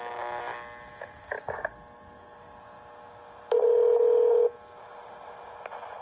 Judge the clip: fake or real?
real